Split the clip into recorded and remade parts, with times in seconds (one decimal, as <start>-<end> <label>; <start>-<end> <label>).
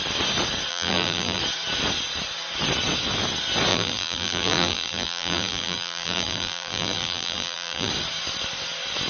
0.0-0.7 recorded; 0.7-1.4 remade; 1.4-3.7 recorded; 3.7-7.9 remade; 7.9-9.1 recorded